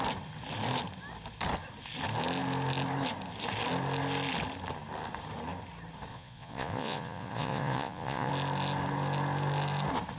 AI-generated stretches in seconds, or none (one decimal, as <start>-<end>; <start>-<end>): 6.1-8.3